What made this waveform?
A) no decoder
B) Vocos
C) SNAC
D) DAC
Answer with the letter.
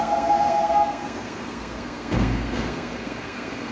C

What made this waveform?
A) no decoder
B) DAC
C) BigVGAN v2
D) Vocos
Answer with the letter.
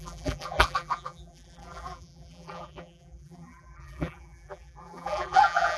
C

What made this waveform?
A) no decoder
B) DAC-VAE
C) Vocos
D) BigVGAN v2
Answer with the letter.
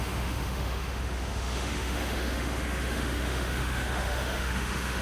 B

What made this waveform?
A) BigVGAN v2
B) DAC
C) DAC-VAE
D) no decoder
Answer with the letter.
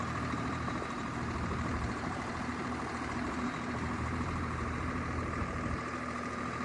A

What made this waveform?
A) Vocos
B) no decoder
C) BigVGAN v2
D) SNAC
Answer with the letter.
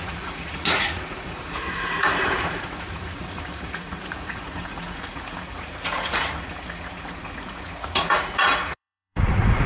A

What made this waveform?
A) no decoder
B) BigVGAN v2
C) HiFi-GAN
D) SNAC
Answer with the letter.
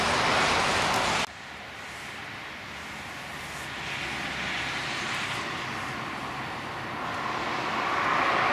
A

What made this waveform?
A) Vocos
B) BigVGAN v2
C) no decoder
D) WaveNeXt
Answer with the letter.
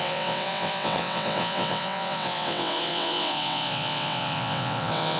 D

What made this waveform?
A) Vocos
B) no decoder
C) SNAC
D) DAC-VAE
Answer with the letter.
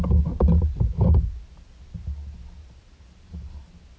B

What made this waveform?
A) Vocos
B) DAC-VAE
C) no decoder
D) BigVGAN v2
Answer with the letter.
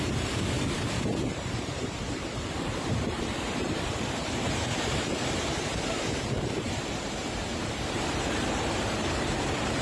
D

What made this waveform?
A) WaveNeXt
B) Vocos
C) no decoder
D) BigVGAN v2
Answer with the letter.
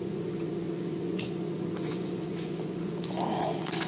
B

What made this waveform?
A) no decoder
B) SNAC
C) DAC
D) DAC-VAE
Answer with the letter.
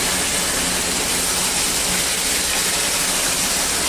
A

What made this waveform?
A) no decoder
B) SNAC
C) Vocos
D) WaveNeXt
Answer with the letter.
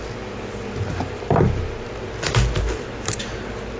A